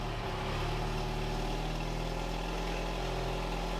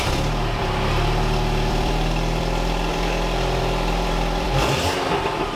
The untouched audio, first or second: first